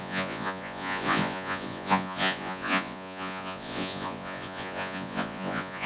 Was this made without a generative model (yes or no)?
no